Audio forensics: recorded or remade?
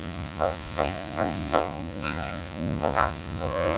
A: remade